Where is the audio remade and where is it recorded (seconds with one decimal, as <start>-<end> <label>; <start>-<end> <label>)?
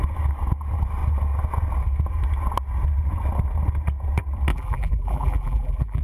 0.0-4.5 recorded; 4.5-6.0 remade